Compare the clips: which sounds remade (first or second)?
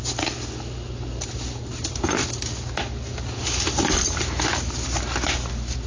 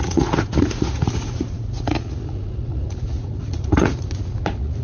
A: second